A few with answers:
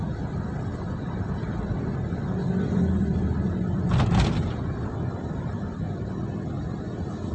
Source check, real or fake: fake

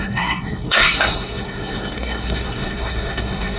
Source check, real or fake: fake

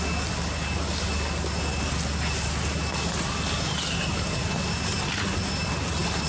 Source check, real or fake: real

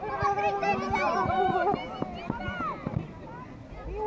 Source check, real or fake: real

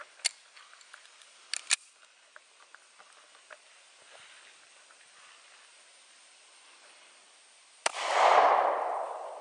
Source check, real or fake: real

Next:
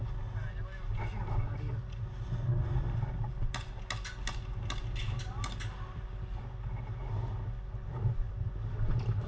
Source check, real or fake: real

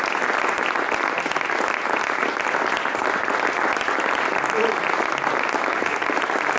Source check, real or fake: real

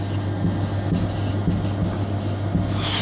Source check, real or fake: real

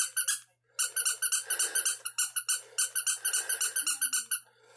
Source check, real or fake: real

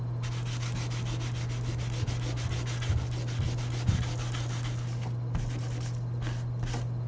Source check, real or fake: real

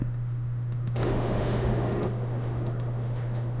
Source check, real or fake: fake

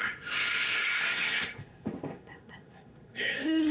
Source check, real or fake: fake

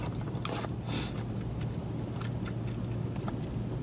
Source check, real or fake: real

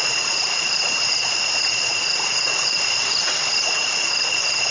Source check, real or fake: fake